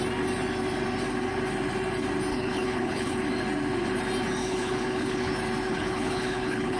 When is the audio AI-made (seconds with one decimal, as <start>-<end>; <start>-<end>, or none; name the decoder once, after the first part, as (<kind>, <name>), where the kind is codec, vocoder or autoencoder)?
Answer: 2.3-3.2 (codec, HILCodec); 4.4-5.3; 5.7-6.8